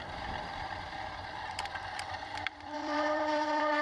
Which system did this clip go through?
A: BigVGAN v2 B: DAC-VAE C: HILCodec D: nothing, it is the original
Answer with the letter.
A